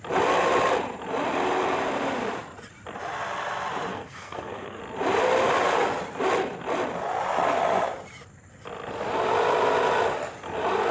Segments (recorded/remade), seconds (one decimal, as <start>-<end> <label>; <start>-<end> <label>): 0.0-3.9 recorded; 3.9-4.8 remade; 4.8-10.9 recorded